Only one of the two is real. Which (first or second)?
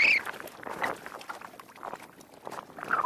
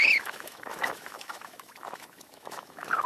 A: first